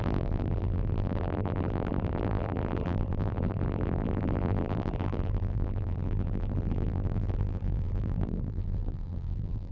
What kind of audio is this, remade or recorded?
remade